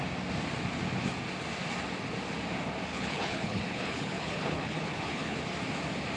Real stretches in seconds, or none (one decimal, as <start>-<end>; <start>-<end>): 0.0-2.9; 5.4-6.2